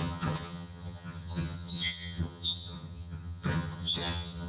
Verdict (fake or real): fake